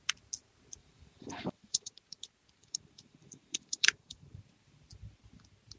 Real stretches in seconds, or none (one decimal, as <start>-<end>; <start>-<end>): 0.0-0.8; 1.9-2.6; 4.4-5.8